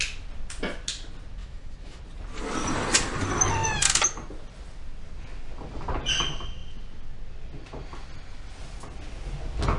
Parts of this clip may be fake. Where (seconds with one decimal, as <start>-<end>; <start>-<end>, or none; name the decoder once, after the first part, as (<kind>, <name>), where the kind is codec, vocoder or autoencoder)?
1.4-2.0 (autoencoder, DAC-VAE)